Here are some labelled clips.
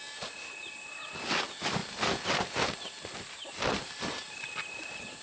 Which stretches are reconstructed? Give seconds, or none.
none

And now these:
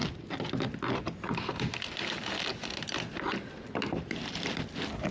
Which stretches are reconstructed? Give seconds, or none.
none